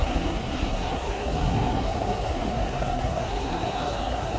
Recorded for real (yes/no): no